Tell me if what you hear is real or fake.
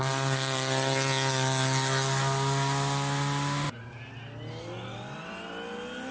real